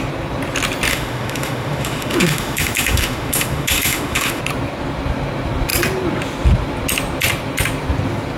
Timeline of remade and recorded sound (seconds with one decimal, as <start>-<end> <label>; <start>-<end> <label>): 0.0-0.9 recorded; 0.9-4.4 remade; 4.4-8.4 recorded